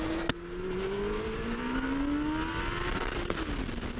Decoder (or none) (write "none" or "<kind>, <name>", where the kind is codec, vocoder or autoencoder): none